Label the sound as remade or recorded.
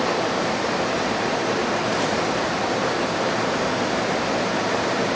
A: remade